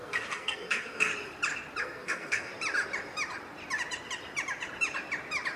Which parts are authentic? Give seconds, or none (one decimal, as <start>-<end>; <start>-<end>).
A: 1.1-1.8; 2.5-5.6

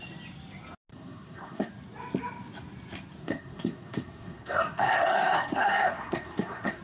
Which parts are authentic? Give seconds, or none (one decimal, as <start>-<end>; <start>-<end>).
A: 0.0-0.9; 1.7-3.2